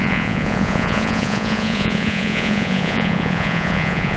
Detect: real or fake fake